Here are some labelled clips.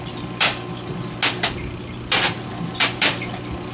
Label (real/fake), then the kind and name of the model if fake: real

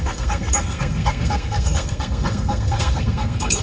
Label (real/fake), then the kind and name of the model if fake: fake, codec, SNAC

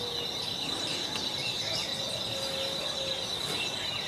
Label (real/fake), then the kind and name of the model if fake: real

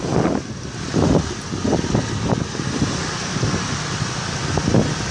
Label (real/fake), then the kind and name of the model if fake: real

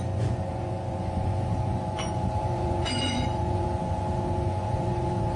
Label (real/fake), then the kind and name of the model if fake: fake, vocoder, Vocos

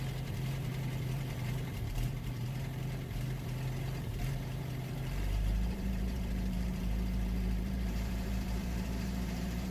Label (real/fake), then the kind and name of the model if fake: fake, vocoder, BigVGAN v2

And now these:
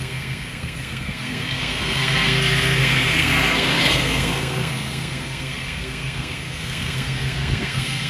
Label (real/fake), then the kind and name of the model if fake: fake, codec, SNAC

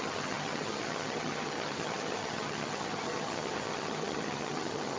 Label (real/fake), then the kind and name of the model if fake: fake, vocoder, HiFi-GAN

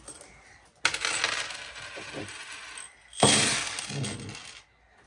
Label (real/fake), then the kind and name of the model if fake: real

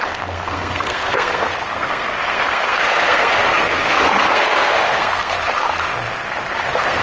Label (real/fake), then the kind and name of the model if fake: fake, codec, SNAC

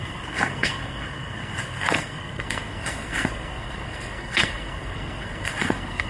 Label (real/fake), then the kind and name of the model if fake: fake, codec, SNAC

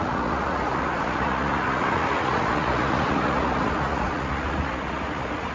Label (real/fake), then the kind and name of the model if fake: fake, vocoder, Vocos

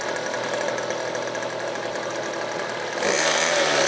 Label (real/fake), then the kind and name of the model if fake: real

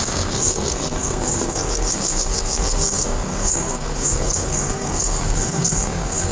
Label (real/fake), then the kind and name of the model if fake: fake, codec, SNAC